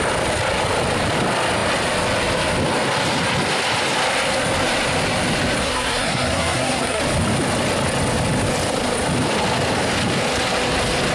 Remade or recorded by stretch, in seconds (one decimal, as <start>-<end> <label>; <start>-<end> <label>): 0.0-5.6 recorded; 5.6-7.0 remade; 7.0-11.1 recorded